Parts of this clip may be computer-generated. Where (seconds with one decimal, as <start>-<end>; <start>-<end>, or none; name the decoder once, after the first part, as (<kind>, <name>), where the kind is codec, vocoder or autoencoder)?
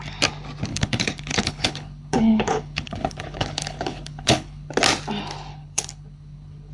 0.7-4.7 (codec, HILCodec); 5.5-6.7